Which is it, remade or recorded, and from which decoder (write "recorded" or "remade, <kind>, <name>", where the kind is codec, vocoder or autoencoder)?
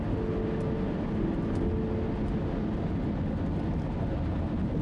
recorded